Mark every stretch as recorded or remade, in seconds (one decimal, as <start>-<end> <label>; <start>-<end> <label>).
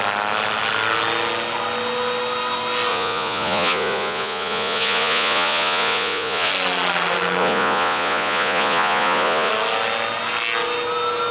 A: 0.0-2.9 recorded; 2.9-6.5 remade; 6.5-7.4 recorded; 7.4-9.5 remade; 9.5-11.3 recorded